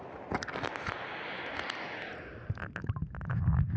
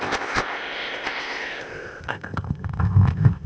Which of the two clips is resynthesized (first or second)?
second